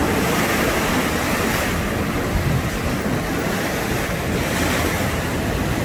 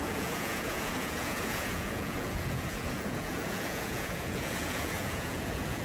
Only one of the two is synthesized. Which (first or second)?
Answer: second